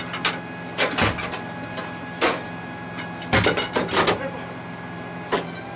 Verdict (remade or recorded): recorded